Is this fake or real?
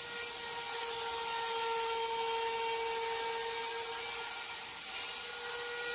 real